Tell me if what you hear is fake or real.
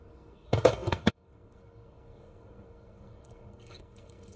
fake